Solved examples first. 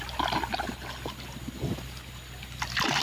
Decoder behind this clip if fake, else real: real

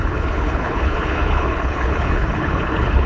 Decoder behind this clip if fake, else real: fake, codec, HILCodec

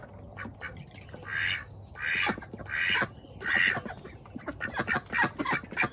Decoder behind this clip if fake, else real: real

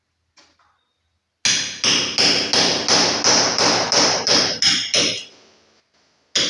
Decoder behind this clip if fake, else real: real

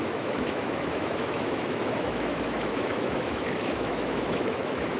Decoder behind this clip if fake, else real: fake, autoencoder, DAC-VAE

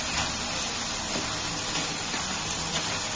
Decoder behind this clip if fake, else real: real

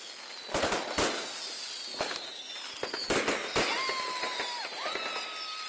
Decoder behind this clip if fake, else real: real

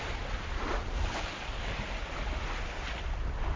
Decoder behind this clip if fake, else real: real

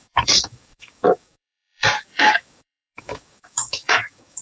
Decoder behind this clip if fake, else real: fake, codec, DAC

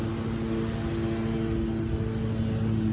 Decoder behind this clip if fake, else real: real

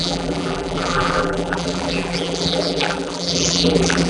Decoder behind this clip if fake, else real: fake, vocoder, BigVGAN v2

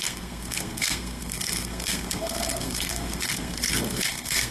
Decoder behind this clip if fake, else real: fake, codec, SNAC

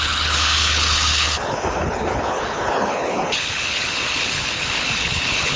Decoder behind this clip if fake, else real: fake, codec, HILCodec